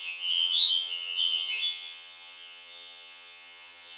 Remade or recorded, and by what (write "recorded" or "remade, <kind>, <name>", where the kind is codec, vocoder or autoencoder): remade, vocoder, HiFi-GAN